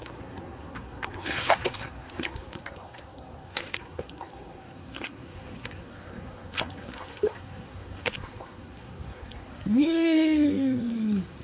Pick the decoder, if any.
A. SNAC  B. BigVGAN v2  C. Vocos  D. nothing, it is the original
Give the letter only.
A